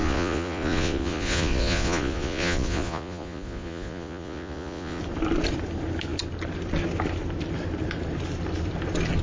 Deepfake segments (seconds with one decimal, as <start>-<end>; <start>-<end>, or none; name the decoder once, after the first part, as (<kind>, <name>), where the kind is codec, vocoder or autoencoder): 0.0-5.0 (vocoder, Vocos)